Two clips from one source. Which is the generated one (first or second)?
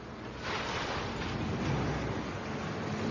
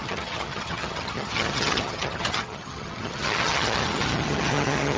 second